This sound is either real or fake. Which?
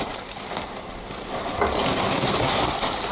real